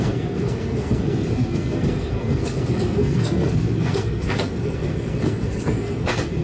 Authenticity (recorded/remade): remade